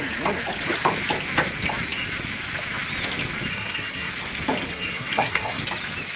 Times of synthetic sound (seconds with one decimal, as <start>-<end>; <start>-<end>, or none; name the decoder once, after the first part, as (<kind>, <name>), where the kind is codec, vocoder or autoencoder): 3.5-4.1 (codec, SNAC); 4.7-5.6

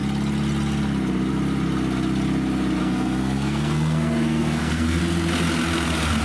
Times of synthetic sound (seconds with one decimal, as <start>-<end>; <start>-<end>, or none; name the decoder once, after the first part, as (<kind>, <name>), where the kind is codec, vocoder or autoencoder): 2.8-5.0 (codec, SNAC)

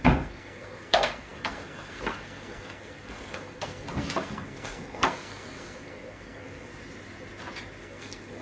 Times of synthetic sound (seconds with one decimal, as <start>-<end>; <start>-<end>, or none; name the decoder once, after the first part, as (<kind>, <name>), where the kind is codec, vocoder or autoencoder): 0.0-6.7 (codec, SNAC); 7.8-8.4

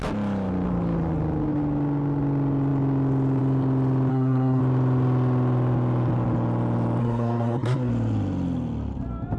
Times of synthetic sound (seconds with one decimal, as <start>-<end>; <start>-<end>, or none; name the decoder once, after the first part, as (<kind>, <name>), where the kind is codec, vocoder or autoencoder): 4.1-4.6 (codec, SNAC); 7.0-7.9

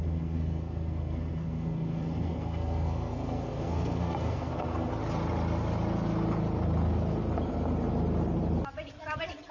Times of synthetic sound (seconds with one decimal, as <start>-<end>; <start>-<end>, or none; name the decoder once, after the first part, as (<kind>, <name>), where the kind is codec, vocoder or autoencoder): 0.0-4.9 (codec, SNAC)

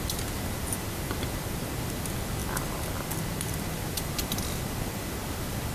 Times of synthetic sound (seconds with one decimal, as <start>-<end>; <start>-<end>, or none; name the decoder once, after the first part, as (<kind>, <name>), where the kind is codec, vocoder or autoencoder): none

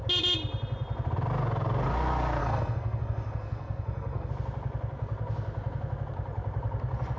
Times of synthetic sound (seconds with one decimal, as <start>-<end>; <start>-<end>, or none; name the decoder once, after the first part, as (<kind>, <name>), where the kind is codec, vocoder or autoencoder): 2.4-4.3 (codec, SNAC)

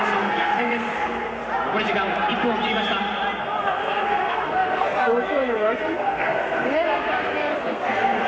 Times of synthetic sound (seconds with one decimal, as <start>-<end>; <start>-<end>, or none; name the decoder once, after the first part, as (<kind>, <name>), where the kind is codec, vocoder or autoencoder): 0.0-1.4 (codec, SNAC); 3.4-8.3